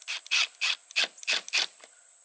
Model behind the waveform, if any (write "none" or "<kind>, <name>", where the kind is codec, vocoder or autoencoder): none